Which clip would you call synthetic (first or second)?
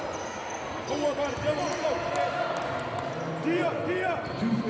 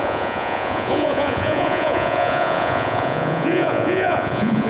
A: second